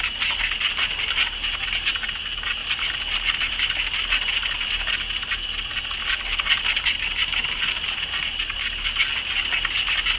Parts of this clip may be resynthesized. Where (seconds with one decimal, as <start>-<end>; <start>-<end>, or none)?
none